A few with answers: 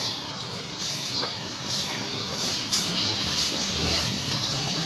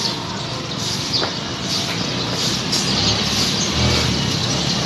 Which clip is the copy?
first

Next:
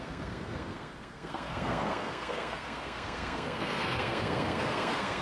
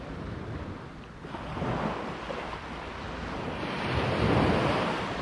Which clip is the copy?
first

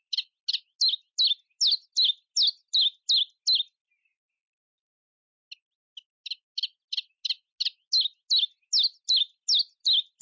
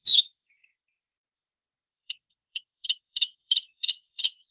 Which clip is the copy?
second